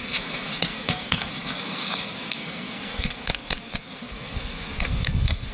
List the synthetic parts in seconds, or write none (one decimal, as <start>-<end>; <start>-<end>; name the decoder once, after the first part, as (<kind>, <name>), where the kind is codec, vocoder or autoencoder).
0.0-5.5 (codec, SNAC)